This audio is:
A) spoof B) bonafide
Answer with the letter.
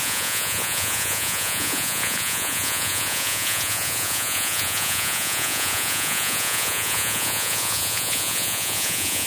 A